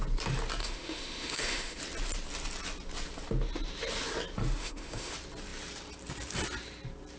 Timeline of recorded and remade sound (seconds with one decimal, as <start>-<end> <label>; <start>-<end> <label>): 0.0-0.6 recorded; 0.6-1.8 remade; 1.8-4.6 recorded; 4.6-5.1 remade; 5.1-7.2 recorded